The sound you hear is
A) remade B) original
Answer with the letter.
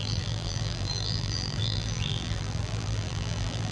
A